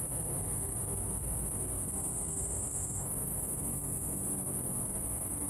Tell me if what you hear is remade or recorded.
remade